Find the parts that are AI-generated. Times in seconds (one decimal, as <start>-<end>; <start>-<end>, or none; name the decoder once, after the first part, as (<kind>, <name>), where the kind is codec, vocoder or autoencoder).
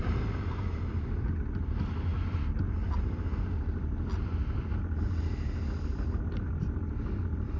none